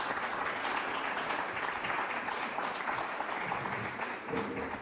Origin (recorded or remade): recorded